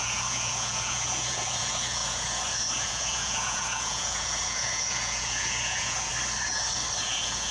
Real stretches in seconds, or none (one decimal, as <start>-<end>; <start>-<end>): 6.1-7.0